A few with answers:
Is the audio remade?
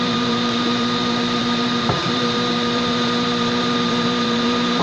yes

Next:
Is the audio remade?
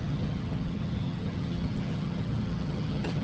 yes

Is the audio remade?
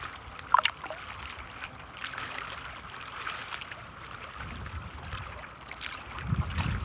no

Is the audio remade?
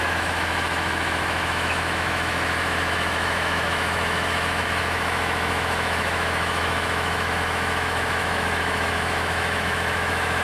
yes